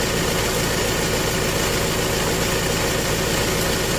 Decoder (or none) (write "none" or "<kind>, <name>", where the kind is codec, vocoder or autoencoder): none